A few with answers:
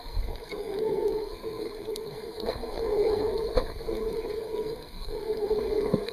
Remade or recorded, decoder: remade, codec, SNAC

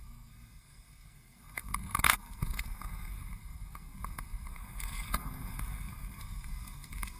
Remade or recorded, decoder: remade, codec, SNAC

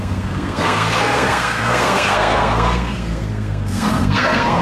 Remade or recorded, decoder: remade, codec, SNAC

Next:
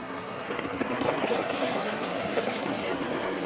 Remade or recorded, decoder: remade, codec, SNAC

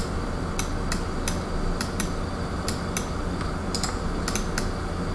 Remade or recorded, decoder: recorded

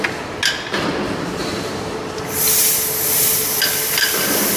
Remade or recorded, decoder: recorded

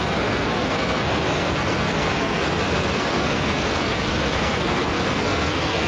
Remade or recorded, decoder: remade, codec, SNAC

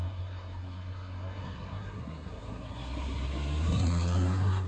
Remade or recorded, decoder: remade, codec, SNAC